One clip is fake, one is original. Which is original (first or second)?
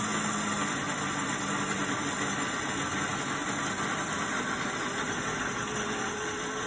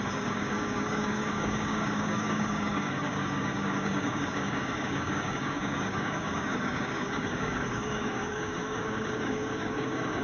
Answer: first